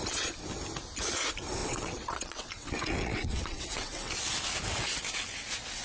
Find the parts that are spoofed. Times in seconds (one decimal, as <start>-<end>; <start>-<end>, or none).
1.6-4.1